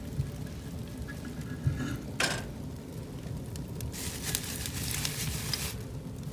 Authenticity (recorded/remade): recorded